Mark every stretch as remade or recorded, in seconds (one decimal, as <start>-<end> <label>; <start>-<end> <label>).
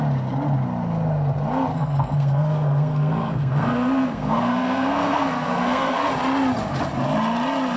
0.0-1.7 recorded; 1.7-6.1 remade; 6.1-7.8 recorded